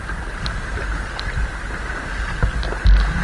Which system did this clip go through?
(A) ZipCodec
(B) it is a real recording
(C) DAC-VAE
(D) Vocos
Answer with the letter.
B